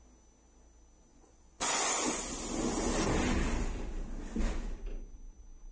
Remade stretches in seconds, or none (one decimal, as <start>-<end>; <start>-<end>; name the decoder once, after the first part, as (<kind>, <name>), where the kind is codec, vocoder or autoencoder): 1.1-2.2 (vocoder, Vocos)